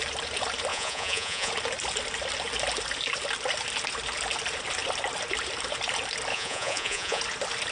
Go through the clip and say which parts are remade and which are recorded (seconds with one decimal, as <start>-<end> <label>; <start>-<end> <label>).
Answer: 0.0-0.7 recorded; 0.7-1.5 remade; 1.5-6.3 recorded; 6.3-7.2 remade; 7.2-7.7 recorded